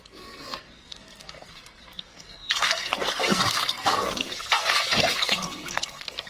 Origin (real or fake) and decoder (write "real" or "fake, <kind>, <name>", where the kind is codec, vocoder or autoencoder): fake, codec, SNAC